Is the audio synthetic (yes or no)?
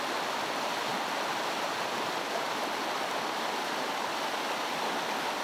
no